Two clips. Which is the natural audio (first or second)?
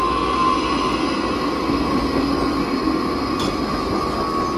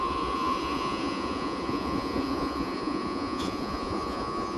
first